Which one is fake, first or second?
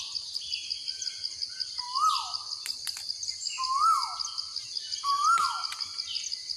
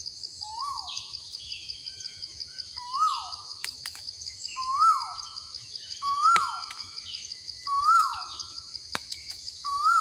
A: second